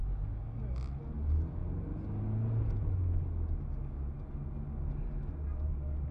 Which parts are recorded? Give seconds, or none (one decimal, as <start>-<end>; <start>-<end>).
0.0-6.1